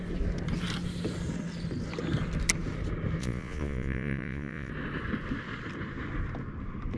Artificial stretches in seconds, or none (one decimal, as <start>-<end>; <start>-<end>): 3.2-4.7